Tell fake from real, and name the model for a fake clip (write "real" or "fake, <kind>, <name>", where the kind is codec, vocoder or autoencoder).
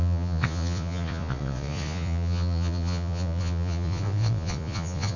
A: fake, vocoder, Vocos